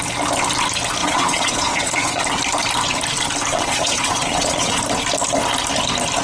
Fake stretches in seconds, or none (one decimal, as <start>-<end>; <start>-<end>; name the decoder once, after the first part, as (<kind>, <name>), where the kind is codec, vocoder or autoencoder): 1.0-2.2 (vocoder, Vocos); 3.5-4.8